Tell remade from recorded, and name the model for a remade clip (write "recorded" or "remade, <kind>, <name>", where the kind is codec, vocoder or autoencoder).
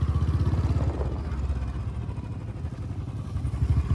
recorded